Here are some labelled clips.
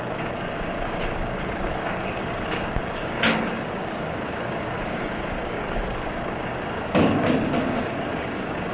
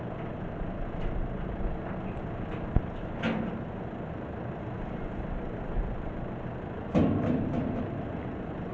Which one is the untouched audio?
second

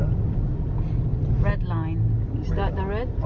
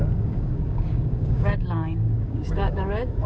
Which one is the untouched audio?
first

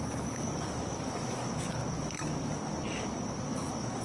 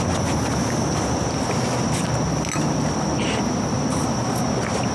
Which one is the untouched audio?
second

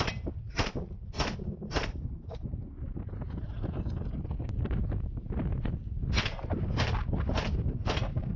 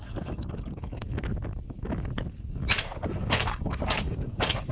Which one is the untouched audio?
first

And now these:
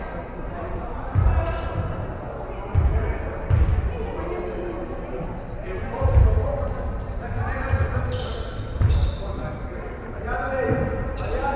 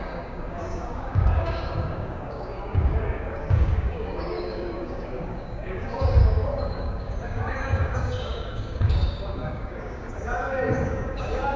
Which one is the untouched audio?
first